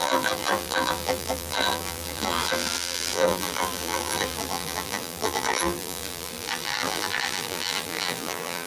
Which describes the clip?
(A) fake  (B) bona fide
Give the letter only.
A